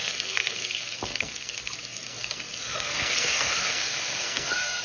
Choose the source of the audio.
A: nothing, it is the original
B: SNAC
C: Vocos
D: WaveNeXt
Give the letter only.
B